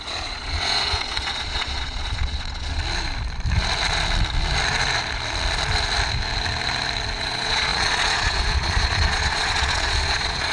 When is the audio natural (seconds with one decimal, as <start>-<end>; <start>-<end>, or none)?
2.8-7.2